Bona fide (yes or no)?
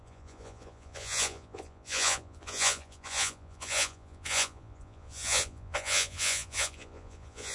no